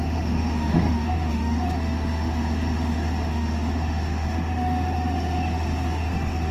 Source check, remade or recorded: remade